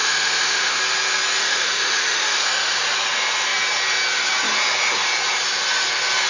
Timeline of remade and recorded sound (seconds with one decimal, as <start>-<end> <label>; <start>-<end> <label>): 0.0-0.8 remade; 0.8-1.4 recorded; 1.4-2.8 remade; 2.8-6.3 recorded